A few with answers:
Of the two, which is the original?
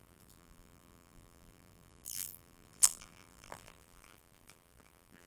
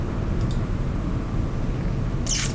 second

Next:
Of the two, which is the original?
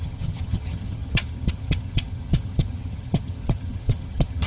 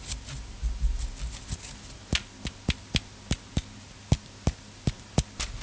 second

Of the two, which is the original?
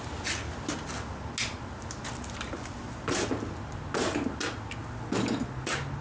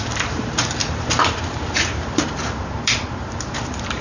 first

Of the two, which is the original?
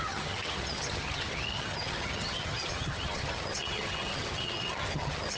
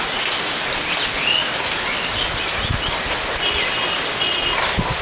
second